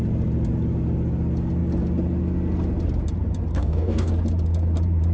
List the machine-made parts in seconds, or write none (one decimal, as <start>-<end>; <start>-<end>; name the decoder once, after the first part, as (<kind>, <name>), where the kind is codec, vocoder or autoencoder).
3.5-4.1 (codec, DAC)